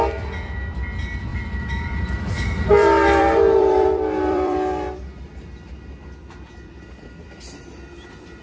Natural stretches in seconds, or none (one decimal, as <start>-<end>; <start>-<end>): 0.0-1.3; 5.0-8.4